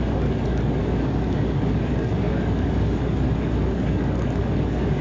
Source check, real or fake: fake